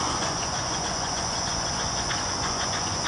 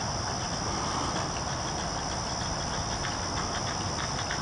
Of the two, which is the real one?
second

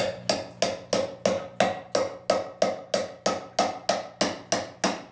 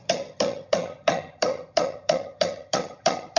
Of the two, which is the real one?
first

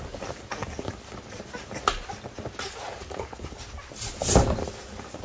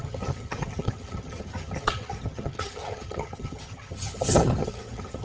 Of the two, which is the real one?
first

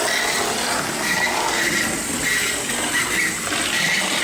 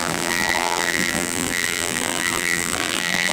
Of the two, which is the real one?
first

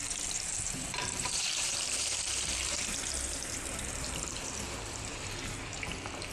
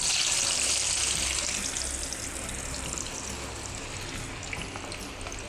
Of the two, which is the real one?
second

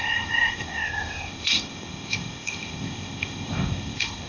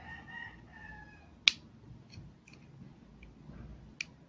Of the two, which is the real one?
second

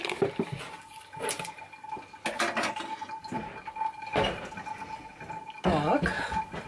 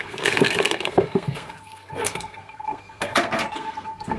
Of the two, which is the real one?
first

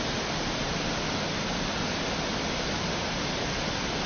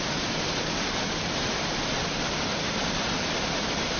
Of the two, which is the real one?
first